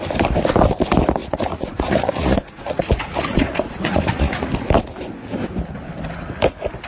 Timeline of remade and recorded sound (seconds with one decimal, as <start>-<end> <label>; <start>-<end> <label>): 0.0-1.2 recorded; 1.2-4.5 remade; 4.5-6.9 recorded